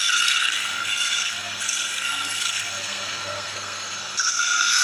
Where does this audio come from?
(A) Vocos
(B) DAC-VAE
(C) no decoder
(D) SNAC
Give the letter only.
D